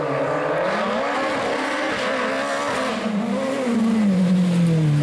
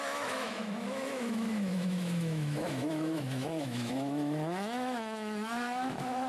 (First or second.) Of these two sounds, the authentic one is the first